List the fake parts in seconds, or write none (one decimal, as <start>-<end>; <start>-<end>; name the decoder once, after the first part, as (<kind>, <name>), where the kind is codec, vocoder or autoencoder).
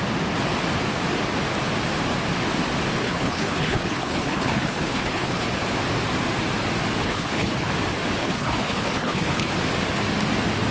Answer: 3.0-5.5 (codec, HILCodec); 7.0-7.7; 8.2-9.5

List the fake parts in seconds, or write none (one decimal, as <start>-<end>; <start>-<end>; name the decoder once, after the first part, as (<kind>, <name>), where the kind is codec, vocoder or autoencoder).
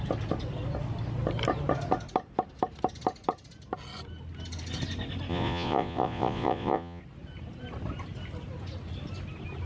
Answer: 5.3-7.0 (vocoder, Vocos)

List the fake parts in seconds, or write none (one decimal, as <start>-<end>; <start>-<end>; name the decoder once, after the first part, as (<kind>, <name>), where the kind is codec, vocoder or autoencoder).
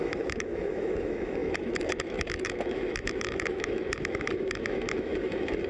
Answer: 0.0-5.7 (autoencoder, DAC-VAE)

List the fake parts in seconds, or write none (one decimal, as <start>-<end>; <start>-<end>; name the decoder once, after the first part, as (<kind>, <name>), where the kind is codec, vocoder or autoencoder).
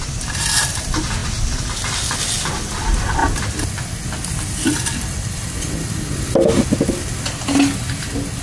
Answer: none